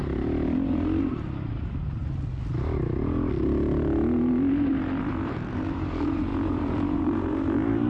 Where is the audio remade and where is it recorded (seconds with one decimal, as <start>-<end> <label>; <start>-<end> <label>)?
0.0-1.0 recorded; 1.0-2.0 remade; 2.0-5.0 recorded; 5.0-7.9 remade